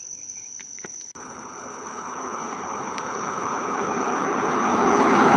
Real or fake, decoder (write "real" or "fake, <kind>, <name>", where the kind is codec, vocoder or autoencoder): fake, codec, HILCodec